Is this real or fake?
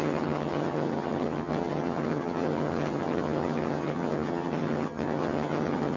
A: fake